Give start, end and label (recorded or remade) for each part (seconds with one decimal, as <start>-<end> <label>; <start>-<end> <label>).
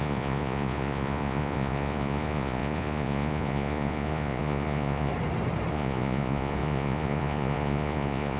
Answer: 0.0-5.1 remade; 5.1-5.7 recorded; 5.7-8.4 remade